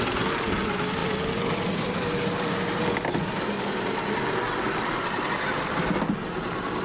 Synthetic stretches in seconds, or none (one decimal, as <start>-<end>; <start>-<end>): none